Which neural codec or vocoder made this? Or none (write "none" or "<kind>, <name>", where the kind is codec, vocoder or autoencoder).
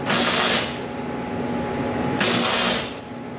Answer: none